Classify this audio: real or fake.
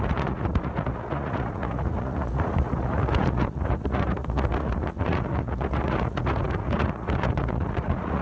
fake